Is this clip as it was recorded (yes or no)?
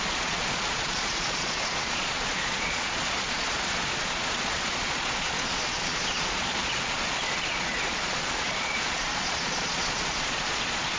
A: no